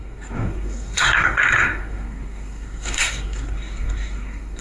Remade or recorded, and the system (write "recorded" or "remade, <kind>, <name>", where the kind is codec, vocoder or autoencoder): remade, codec, SNAC